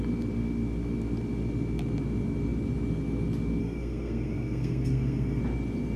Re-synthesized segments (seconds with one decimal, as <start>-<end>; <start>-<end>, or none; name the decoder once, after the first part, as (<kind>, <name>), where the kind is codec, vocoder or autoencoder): 3.6-5.4 (codec, SNAC)